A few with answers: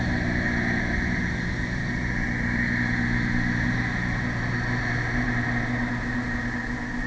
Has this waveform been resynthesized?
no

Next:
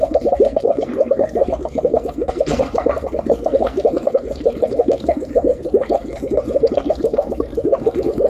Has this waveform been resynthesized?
yes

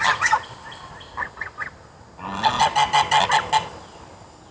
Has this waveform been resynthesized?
no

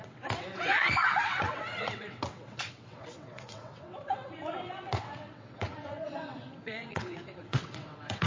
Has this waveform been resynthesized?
yes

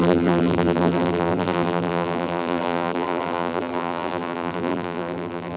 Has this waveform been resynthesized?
yes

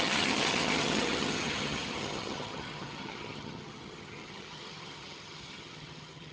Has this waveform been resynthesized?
yes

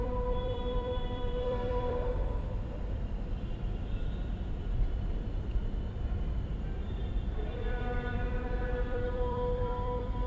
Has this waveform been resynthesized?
yes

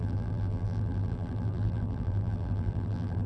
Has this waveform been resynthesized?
yes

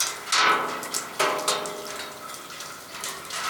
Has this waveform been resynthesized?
no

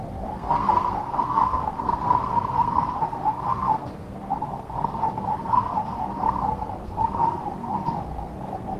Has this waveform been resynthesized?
yes